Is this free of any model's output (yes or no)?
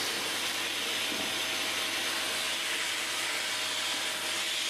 yes